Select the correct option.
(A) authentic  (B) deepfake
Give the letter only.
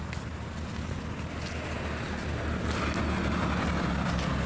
A